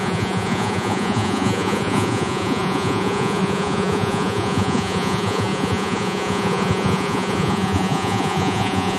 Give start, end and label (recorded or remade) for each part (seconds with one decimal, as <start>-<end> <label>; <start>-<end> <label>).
0.0-9.0 remade